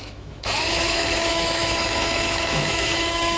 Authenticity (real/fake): fake